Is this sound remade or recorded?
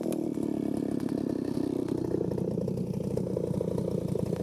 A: recorded